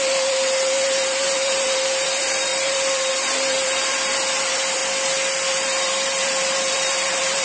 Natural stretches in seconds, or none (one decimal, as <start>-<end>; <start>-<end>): 4.8-5.5